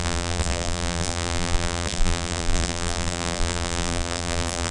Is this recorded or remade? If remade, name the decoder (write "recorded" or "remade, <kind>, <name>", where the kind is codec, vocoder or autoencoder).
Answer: remade, vocoder, BigVGAN v2